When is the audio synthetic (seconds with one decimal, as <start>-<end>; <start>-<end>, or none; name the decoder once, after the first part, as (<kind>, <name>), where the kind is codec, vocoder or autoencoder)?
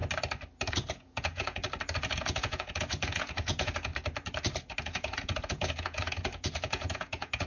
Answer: 0.7-1.6 (vocoder, Vocos); 2.1-3.9; 4.8-7.5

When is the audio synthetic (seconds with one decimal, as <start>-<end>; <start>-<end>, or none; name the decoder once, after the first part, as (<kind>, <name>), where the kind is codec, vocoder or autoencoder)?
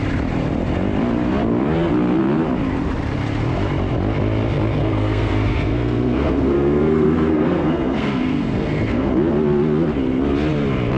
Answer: 4.8-9.1 (codec, SNAC)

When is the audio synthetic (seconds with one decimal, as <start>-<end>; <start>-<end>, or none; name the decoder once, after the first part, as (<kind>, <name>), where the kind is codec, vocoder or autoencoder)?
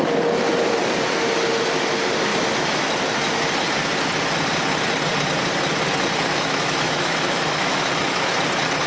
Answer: 6.3-8.3 (autoencoder, DAC-VAE)